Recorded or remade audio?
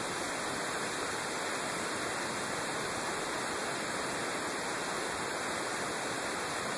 recorded